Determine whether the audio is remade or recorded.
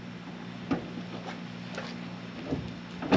recorded